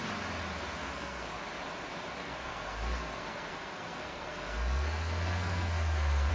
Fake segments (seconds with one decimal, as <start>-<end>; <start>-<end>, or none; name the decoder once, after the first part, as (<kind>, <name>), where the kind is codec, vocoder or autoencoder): 0.8-1.3 (codec, SNAC); 2.2-6.3